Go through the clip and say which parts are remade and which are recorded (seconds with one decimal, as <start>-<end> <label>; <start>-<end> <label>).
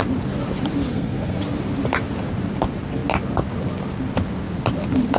0.0-0.9 recorded; 0.9-1.4 remade; 1.4-5.2 recorded